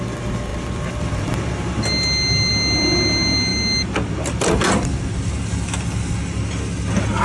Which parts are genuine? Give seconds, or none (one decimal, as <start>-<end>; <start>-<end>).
0.0-7.2